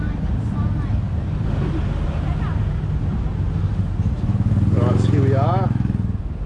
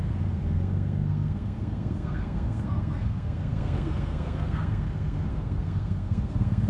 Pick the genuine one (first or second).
first